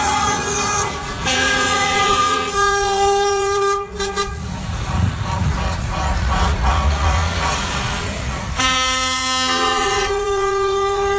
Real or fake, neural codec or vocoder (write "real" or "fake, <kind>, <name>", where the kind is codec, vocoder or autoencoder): fake, vocoder, Vocos